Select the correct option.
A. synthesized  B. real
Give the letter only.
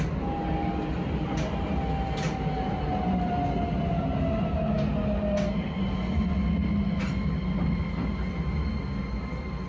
B